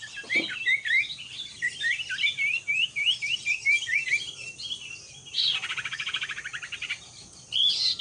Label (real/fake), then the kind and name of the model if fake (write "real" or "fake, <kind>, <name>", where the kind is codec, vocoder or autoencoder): real